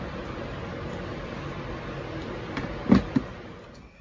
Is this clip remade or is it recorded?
recorded